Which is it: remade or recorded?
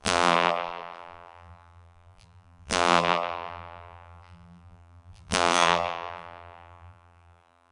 remade